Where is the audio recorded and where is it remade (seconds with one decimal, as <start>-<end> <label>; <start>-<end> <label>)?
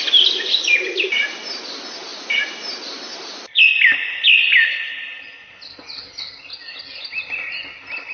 0.0-8.1 recorded